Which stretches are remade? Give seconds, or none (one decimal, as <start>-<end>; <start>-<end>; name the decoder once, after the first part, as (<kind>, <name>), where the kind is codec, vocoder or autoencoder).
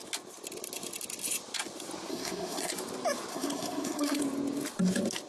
2.1-2.7 (codec, SNAC); 3.3-4.2